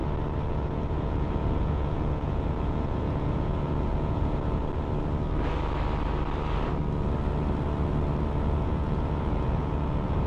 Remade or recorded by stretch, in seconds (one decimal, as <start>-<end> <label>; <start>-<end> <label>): 0.0-0.5 recorded; 0.5-4.6 remade; 4.6-8.4 recorded; 8.4-10.3 remade